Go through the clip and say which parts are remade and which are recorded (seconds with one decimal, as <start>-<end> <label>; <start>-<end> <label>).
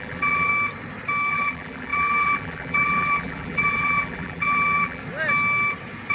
0.0-0.5 remade; 0.5-1.3 recorded; 1.3-5.0 remade; 5.0-6.1 recorded